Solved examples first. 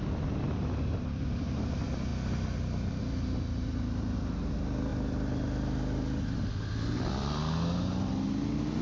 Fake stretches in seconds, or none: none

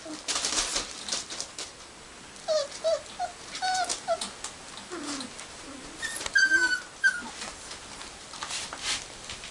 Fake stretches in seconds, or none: none

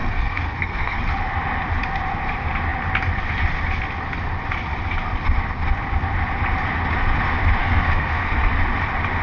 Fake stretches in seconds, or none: 0.0-1.0 (codec, SNAC); 7.6-8.5